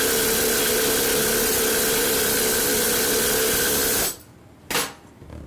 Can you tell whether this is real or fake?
real